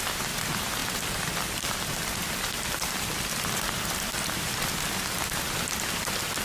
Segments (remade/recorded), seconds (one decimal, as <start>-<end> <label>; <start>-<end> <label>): 0.0-0.8 recorded; 0.8-4.6 remade; 4.6-6.4 recorded